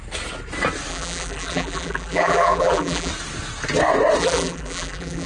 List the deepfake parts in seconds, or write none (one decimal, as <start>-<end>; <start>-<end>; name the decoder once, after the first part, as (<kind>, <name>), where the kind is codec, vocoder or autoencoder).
0.9-3.1 (vocoder, BigVGAN v2); 4.2-5.3